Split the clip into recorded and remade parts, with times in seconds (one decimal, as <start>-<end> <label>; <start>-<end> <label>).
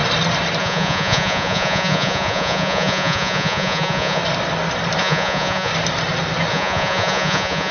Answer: 0.0-0.6 recorded; 0.6-4.2 remade; 4.2-5.0 recorded; 5.0-5.7 remade; 5.7-6.5 recorded; 6.5-7.7 remade